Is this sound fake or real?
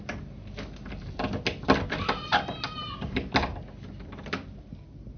real